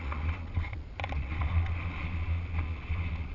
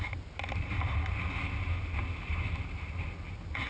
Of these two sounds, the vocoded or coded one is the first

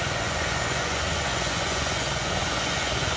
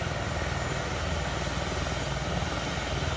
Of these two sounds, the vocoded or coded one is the first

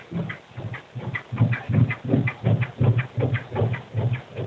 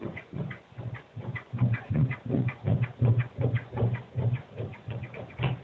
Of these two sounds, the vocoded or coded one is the second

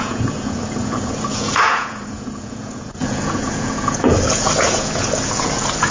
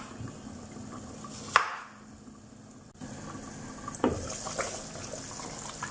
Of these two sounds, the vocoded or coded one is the first